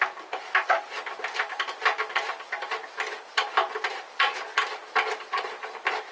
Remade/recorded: recorded